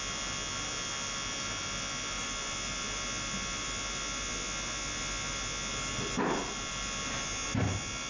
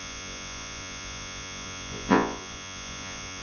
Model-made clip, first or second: second